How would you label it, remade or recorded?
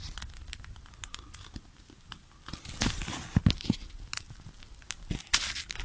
recorded